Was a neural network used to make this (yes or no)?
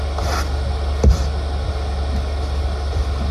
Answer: no